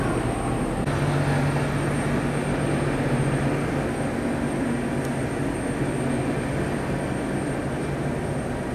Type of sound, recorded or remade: recorded